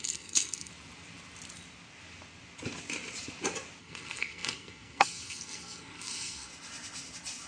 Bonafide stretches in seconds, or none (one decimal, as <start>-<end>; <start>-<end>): 0.7-3.8; 6.5-7.5